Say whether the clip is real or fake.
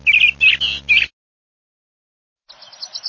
real